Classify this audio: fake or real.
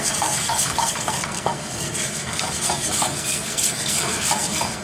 fake